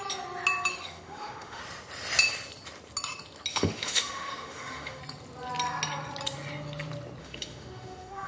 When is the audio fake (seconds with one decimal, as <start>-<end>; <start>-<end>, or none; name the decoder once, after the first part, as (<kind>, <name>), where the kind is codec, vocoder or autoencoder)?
0.7-1.6 (autoencoder, DAC-VAE); 3.5-5.0; 7.2-8.3